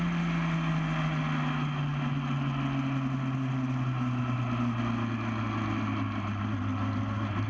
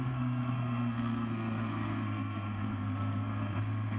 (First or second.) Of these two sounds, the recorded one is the first